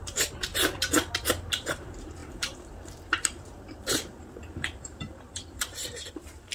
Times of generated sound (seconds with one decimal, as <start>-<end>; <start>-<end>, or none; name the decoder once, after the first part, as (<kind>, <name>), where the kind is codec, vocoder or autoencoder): 0.0-0.5 (vocoder, BigVGAN v2); 1.2-6.5